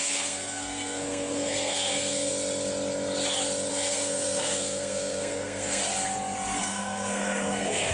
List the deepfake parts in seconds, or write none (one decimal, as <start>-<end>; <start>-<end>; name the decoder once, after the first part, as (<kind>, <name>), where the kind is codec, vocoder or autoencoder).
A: 0.0-2.3 (codec, SNAC); 3.7-5.8; 6.6-7.9